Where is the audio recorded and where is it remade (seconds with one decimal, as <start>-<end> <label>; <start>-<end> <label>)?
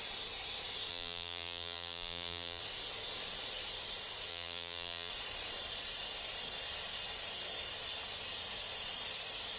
0.0-0.9 recorded; 0.9-2.6 remade; 2.6-4.3 recorded; 4.3-5.1 remade; 5.1-9.6 recorded